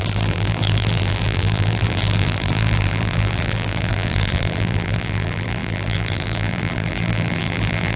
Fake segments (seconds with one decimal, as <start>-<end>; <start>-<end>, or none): 0.0-8.0